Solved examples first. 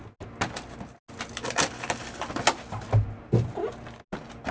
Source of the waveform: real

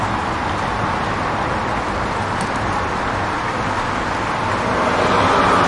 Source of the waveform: real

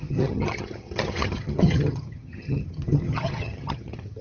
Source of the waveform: fake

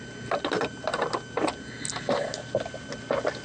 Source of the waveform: real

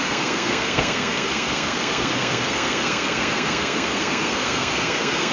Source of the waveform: fake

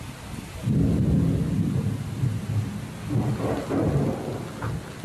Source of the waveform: real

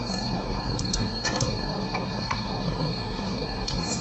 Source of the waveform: fake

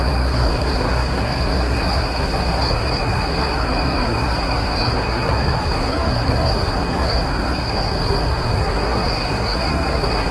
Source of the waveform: fake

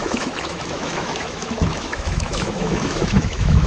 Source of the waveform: fake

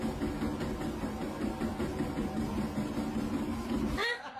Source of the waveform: real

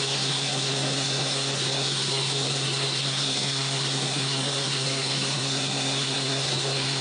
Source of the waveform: fake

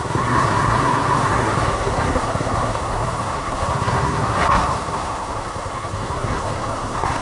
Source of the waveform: fake